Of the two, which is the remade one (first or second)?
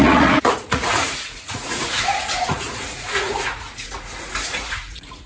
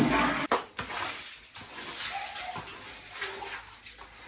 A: first